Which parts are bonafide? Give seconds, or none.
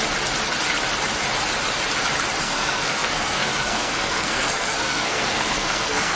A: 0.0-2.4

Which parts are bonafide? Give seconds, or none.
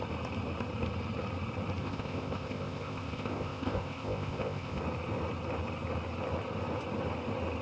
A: 0.0-1.8; 4.8-7.6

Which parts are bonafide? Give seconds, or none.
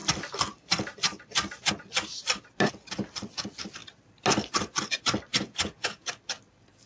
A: 0.0-5.3; 6.1-6.9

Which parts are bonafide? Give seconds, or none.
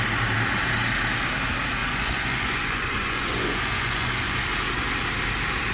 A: 0.0-1.8; 4.4-5.7